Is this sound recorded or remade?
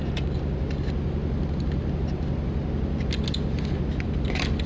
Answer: recorded